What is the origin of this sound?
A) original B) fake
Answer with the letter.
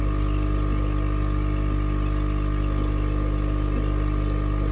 A